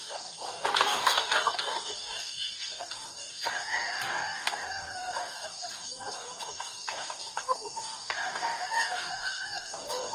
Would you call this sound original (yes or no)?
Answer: no